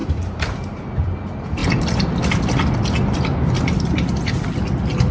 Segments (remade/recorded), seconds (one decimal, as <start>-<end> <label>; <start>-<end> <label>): 0.0-0.8 remade; 0.8-5.1 recorded